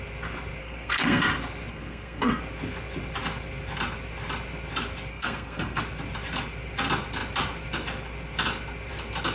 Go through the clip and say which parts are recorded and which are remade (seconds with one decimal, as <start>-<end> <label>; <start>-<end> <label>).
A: 0.0-0.6 recorded; 0.6-1.2 remade; 1.2-1.7 recorded; 1.7-2.4 remade; 2.4-5.1 recorded; 5.1-5.8 remade; 5.8-9.3 recorded